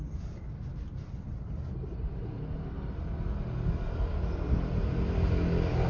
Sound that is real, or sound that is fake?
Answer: real